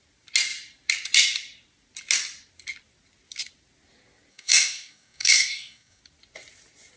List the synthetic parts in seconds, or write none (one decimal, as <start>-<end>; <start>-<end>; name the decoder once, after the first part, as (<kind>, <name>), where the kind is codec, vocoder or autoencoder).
4.3-6.0 (codec, DAC)